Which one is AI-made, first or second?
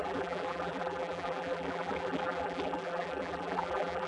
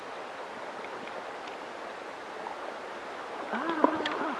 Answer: first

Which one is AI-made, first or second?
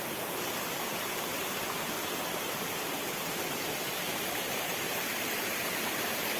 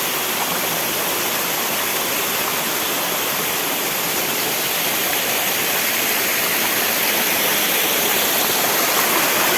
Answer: first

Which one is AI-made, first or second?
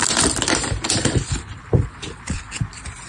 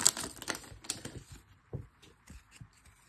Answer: first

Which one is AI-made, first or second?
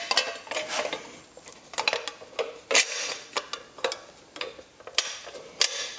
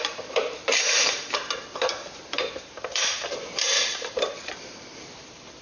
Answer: second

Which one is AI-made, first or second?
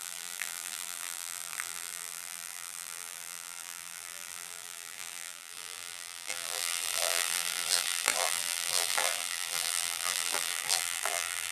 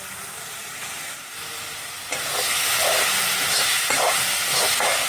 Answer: first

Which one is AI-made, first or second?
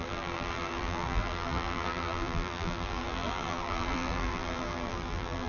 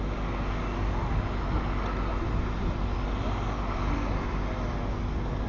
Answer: first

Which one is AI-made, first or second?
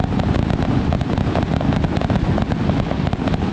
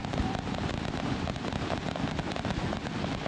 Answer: second